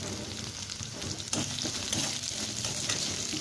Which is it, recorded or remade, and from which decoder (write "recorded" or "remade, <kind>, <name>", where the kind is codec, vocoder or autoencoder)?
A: recorded